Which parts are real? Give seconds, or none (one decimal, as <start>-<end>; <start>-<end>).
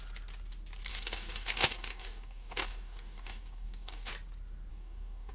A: 0.0-0.9; 4.1-4.7